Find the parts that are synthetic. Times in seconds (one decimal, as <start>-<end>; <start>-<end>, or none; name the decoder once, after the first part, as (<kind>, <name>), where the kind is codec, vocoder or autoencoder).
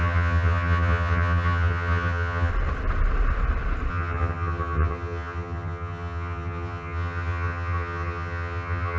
0.0-2.5 (vocoder, HiFi-GAN); 3.9-9.0